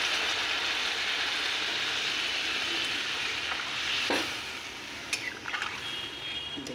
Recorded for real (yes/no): yes